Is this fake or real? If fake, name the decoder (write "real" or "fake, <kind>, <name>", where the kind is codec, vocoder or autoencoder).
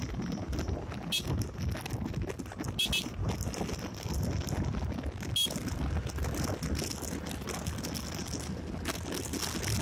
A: real